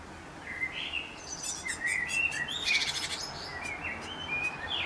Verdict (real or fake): real